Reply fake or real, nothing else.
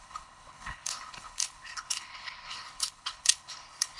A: fake